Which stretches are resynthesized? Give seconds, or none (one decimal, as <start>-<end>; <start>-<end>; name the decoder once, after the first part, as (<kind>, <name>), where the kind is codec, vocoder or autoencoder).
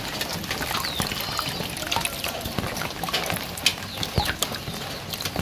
none